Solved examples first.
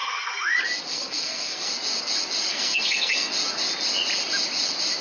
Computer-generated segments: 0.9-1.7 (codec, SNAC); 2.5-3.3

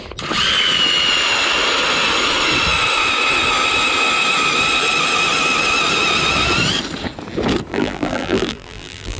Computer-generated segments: 7.7-9.2 (vocoder, BigVGAN v2)

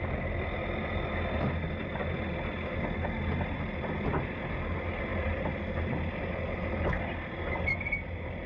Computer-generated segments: none

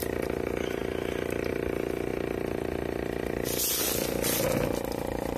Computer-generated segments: none

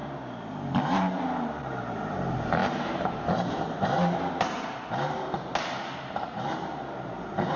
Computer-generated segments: 0.8-7.6 (vocoder, BigVGAN v2)